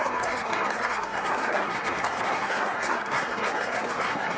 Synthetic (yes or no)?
yes